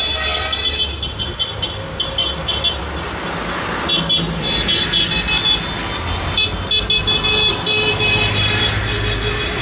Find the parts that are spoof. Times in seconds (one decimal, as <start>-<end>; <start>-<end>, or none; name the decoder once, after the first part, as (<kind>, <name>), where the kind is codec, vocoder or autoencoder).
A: none